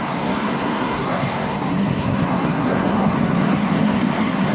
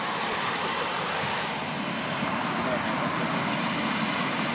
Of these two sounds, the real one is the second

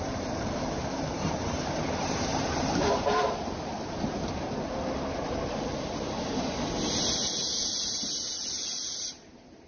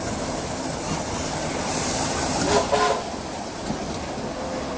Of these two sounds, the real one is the second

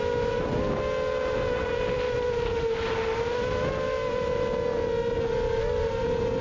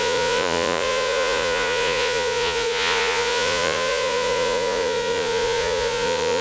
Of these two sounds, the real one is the first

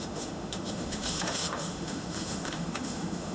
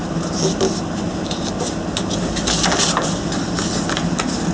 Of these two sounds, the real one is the second